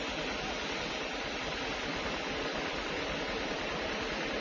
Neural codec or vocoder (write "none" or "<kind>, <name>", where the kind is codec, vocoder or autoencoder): none